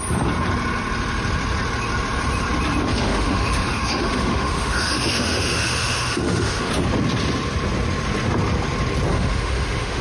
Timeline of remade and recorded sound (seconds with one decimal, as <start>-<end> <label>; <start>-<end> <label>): 0.0-2.9 recorded; 2.9-6.7 remade; 6.7-9.1 recorded; 9.1-10.0 remade